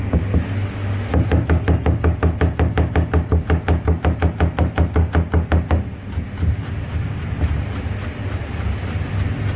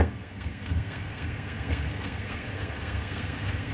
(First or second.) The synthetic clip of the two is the second